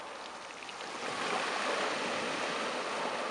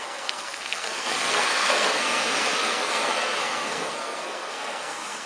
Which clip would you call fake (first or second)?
second